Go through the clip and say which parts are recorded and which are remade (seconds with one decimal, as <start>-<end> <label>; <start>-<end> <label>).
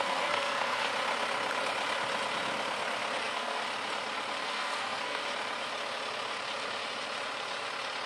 0.0-0.9 remade; 0.9-3.2 recorded; 3.2-3.6 remade; 3.6-4.4 recorded; 4.4-5.2 remade; 5.2-8.1 recorded